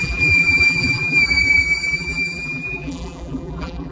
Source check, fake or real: fake